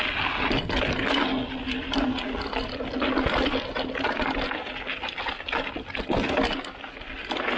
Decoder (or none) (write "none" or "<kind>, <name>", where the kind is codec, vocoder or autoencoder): none